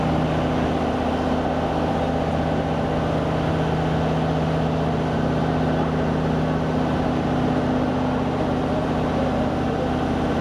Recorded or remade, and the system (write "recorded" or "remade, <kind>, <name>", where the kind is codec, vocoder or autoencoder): recorded